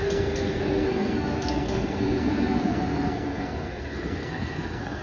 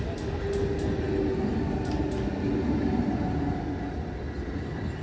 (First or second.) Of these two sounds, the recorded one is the second